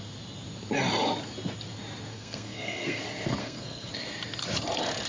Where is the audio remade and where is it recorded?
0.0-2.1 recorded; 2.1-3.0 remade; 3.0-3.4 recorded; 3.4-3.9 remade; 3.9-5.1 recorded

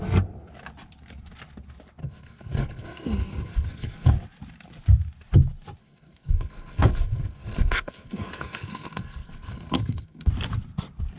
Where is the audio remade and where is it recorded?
0.0-2.0 recorded; 2.0-4.1 remade; 4.1-5.8 recorded; 5.8-10.3 remade; 10.3-11.2 recorded

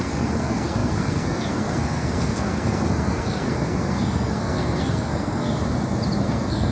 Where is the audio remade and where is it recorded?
0.0-5.6 remade; 5.6-6.2 recorded; 6.2-6.7 remade